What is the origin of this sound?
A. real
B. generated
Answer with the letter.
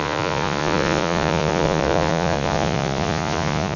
B